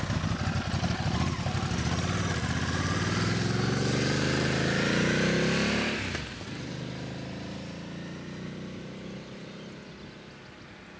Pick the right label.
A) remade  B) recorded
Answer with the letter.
B